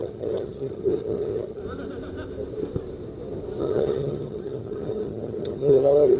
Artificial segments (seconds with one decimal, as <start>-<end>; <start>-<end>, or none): 0.0-1.6; 3.6-6.2

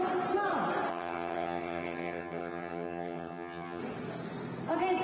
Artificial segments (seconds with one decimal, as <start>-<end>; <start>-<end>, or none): 0.9-3.8

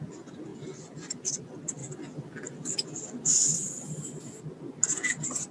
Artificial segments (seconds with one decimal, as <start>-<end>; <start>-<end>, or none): none

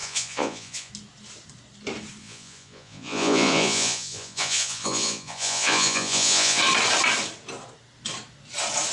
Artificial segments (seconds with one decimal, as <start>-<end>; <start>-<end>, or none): 0.0-0.9; 2.2-6.6

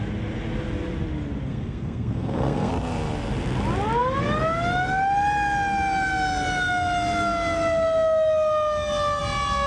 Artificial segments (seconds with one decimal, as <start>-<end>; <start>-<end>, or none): 1.5-2.7

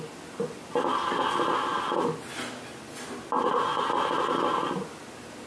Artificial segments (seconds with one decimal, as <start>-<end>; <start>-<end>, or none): none

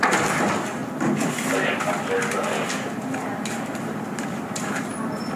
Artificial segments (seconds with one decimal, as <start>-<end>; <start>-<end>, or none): none

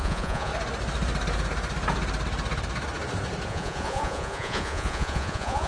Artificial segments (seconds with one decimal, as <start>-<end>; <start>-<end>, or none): 0.0-0.5; 3.5-5.7